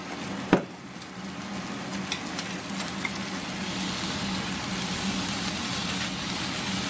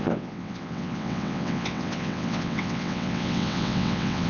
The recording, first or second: first